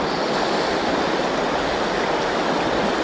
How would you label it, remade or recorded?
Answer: recorded